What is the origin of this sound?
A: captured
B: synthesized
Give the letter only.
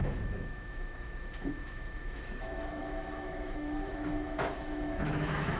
B